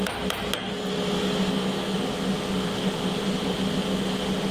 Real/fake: real